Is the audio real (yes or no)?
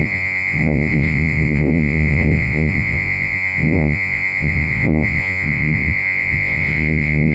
no